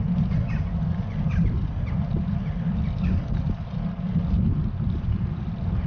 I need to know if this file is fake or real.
real